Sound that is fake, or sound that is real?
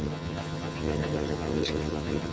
fake